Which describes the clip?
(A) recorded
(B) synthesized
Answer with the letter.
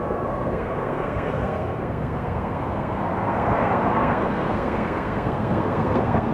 B